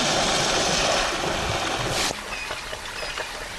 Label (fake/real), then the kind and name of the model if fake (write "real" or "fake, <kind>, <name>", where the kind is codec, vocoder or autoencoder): real